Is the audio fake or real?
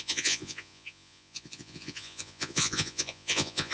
fake